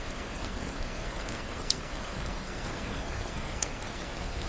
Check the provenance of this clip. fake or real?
fake